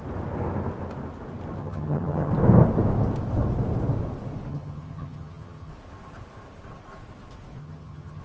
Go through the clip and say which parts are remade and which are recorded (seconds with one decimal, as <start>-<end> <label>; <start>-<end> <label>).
0.0-1.6 recorded; 1.6-2.3 remade; 2.3-4.5 recorded; 4.5-5.7 remade; 5.7-7.6 recorded; 7.6-8.2 remade